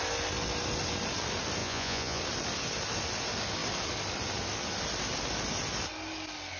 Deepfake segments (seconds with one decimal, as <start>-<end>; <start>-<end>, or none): 1.6-2.2